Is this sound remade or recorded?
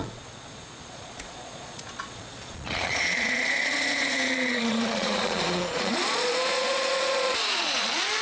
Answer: remade